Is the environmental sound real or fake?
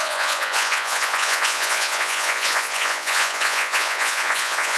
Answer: fake